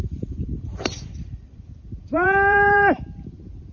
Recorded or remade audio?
remade